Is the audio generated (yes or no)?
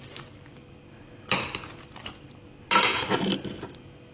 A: no